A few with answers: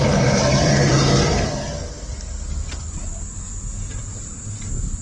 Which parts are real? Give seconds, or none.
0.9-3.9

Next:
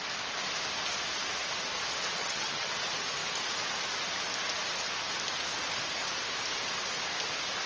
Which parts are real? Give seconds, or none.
0.0-2.2; 2.7-7.7

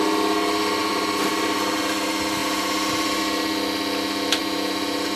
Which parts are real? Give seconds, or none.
0.0-0.8; 1.8-2.4; 3.2-4.4

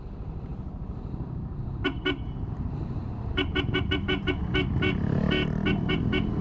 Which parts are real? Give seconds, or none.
0.0-0.5; 4.3-6.4